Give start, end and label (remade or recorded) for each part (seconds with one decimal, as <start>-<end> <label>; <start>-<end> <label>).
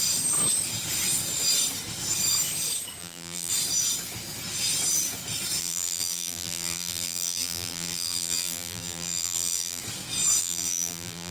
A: 0.0-3.0 recorded; 3.0-3.5 remade; 3.5-5.6 recorded; 5.6-9.8 remade; 9.8-10.4 recorded; 10.4-11.3 remade